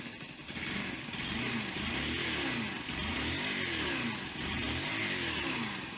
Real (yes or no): yes